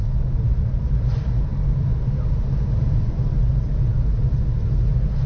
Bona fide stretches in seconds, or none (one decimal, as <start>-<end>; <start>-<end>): 0.0-5.3